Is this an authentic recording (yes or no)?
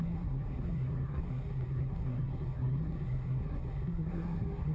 no